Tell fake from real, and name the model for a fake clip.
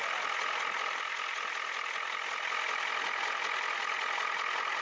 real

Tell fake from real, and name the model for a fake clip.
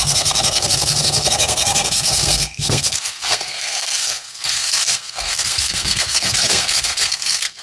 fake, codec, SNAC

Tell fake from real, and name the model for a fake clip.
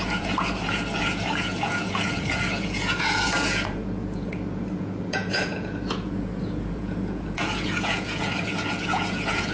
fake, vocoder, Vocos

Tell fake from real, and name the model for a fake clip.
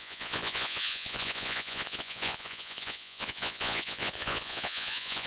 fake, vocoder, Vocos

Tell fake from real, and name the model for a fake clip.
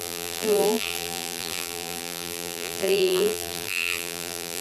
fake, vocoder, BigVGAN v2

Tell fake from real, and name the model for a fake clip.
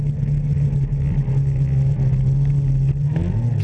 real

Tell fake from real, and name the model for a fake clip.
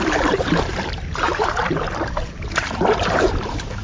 fake, vocoder, BigVGAN v2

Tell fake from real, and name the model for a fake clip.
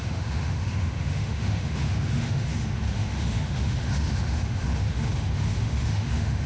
fake, autoencoder, DAC-VAE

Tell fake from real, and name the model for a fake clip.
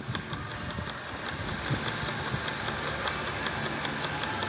real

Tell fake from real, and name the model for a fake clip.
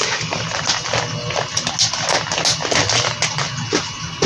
real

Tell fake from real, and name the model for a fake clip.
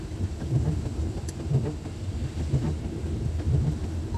real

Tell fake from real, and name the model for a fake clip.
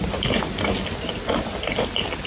real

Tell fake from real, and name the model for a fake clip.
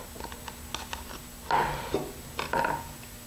real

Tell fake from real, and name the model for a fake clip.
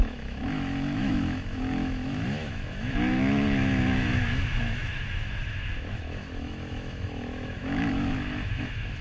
fake, autoencoder, DAC-VAE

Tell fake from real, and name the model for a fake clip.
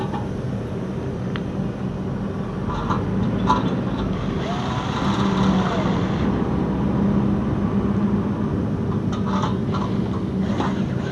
real